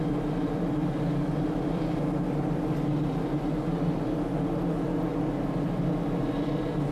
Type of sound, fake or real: real